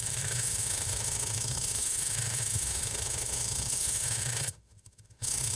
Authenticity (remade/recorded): remade